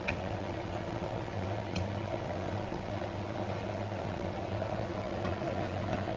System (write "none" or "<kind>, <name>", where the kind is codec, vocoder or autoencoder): vocoder, WaveNeXt